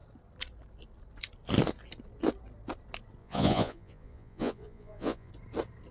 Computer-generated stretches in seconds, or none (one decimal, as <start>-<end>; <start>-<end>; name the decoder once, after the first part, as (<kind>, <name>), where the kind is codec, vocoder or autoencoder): 3.2-5.3 (vocoder, Vocos)